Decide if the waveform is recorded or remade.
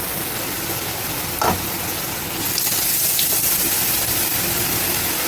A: recorded